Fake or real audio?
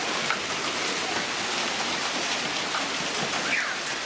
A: real